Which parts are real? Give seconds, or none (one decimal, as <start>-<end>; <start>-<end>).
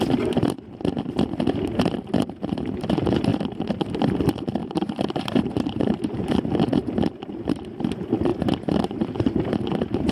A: 0.0-4.6; 6.5-10.1